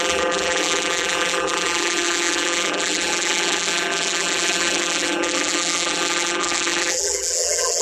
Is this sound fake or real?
fake